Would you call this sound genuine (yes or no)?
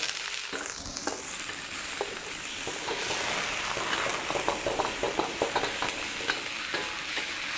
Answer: yes